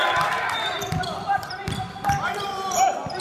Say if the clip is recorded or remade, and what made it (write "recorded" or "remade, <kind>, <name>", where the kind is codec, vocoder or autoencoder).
remade, vocoder, BigVGAN v2